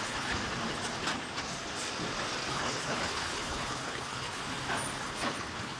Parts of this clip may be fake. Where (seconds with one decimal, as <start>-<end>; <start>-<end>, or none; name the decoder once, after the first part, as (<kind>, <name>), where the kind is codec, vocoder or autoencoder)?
0.0-0.4 (codec, HILCodec); 2.5-4.4; 5.1-5.8